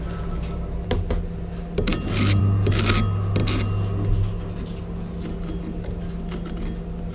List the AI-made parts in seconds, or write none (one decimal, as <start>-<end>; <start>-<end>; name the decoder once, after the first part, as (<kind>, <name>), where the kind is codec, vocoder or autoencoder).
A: none

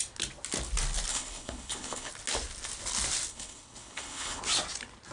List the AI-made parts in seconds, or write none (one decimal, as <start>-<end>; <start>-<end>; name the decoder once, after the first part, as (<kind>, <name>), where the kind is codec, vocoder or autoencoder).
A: 1.1-2.1 (codec, HILCodec); 3.3-4.4

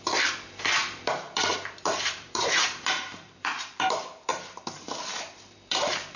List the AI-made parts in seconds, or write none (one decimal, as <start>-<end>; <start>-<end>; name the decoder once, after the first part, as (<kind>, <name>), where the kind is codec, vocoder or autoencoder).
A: 0.0-4.3 (vocoder, BigVGAN v2); 5.2-6.2

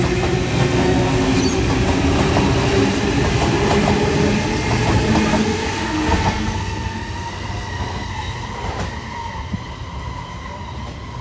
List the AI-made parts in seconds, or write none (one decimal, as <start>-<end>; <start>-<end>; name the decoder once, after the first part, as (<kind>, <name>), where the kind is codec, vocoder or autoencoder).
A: 0.5-1.4 (codec, SNAC); 5.3-8.1